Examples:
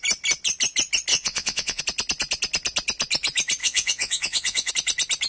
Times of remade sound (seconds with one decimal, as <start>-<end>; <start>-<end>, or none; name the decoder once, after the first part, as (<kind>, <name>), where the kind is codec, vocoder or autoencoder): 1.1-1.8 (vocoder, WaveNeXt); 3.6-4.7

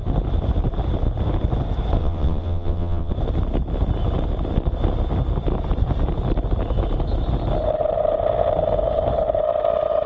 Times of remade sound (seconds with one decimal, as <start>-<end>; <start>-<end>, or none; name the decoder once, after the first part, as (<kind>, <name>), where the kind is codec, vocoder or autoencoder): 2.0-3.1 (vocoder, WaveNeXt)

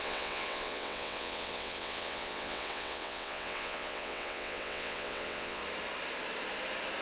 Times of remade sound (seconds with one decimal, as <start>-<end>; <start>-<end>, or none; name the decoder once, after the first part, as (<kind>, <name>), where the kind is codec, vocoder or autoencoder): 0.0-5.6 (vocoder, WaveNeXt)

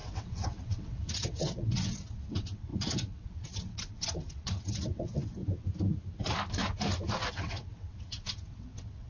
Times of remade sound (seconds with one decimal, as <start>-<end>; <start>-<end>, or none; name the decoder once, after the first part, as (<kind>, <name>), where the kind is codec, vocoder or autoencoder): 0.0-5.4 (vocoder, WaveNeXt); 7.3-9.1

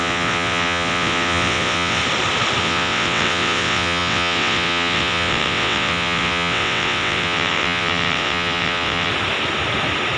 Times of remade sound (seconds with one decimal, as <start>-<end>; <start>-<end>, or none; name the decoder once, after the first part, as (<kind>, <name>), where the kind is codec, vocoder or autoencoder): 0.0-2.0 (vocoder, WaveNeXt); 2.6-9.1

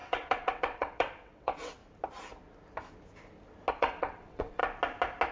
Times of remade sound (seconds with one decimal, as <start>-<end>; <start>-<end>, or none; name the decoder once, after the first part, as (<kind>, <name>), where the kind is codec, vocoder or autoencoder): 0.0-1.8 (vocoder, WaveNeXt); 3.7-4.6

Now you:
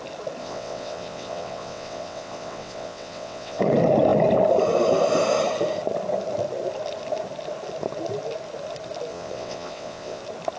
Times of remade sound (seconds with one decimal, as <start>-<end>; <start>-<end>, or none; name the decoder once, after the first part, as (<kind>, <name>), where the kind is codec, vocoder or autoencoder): 0.4-3.6 (vocoder, WaveNeXt); 9.1-10.2

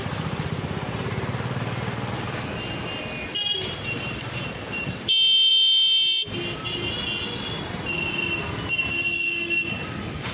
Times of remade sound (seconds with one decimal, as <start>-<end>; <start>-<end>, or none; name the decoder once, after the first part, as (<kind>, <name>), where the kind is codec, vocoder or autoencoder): none